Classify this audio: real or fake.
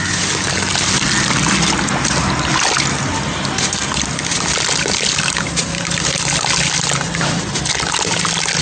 real